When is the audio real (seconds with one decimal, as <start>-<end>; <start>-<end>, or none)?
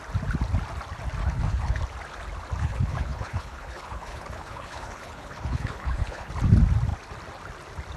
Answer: 0.0-1.2; 1.8-2.6; 6.3-8.0